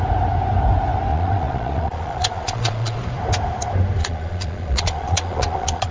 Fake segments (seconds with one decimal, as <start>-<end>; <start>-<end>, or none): 1.1-3.0; 4.0-5.9